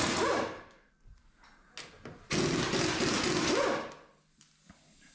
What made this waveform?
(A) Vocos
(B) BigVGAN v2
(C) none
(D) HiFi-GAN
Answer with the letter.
C